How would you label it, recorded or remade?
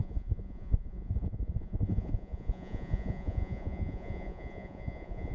remade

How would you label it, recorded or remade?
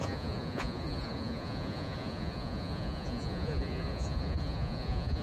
remade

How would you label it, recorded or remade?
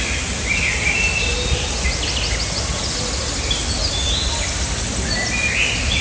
recorded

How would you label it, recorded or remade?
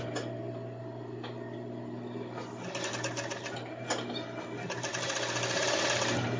recorded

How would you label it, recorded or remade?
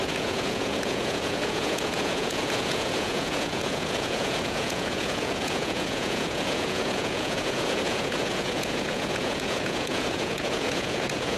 remade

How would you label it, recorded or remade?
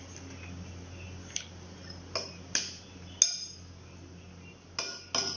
recorded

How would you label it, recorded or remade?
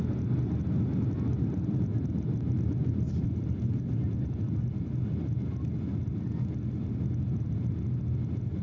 recorded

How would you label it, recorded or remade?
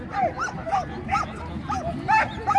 recorded